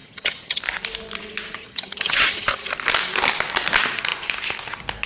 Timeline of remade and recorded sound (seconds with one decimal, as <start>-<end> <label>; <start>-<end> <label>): 0.0-0.6 remade; 0.6-1.6 recorded; 1.6-2.7 remade; 2.7-5.1 recorded